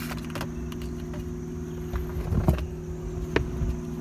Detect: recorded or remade recorded